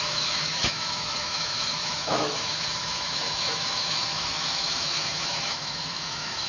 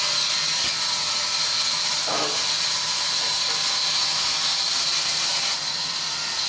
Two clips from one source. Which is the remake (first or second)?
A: first